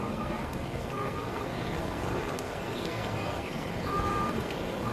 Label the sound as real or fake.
fake